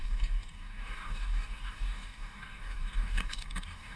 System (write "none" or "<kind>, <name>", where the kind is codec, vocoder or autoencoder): codec, DAC